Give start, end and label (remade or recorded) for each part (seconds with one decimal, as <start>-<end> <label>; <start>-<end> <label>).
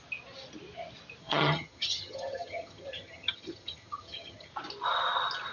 0.0-1.2 recorded; 1.2-4.5 remade; 4.5-5.5 recorded